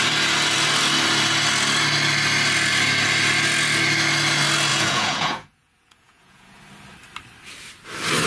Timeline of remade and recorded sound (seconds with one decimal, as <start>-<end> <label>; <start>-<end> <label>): 0.0-4.7 recorded; 4.7-6.6 remade; 6.6-8.3 recorded